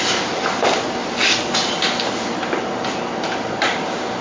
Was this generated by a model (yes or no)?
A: no